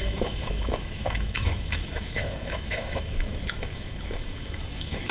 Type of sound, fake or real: fake